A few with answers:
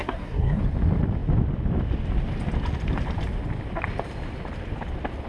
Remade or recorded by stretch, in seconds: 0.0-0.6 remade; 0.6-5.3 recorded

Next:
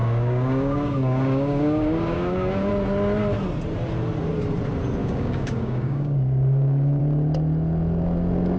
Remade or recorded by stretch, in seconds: 0.0-2.7 remade; 2.7-5.0 recorded; 5.0-7.0 remade; 7.0-8.6 recorded

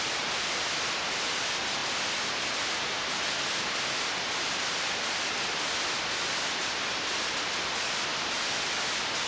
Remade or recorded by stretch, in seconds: 0.0-9.3 recorded

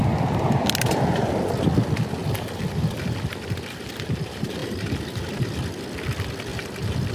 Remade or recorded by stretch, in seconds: 0.0-2.2 recorded; 2.2-3.3 remade; 3.3-6.5 recorded; 6.5-7.1 remade

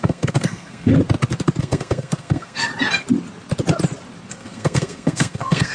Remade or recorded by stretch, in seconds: 0.0-0.9 remade; 0.9-1.6 recorded; 1.6-2.7 remade; 2.7-4.3 recorded; 4.3-5.7 remade

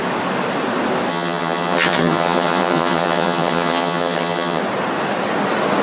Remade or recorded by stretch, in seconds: 0.0-1.1 recorded; 1.1-4.6 remade; 4.6-5.8 recorded